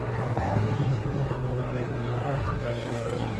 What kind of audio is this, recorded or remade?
remade